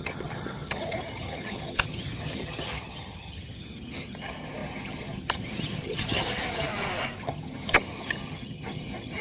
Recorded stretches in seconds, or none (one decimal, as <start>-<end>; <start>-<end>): 6.7-7.2